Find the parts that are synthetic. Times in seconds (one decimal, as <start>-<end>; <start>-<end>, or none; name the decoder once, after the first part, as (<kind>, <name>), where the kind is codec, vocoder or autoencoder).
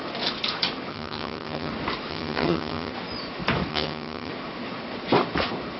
0.9-1.7 (vocoder, HiFi-GAN); 2.1-2.9; 3.7-4.3